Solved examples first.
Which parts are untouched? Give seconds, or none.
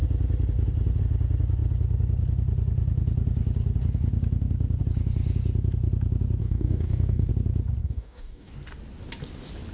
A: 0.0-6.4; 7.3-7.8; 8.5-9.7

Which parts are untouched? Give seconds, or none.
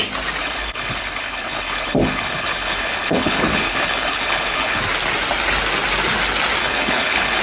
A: 0.0-0.4; 4.8-6.6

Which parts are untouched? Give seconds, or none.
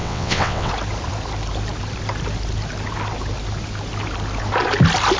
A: 0.7-5.2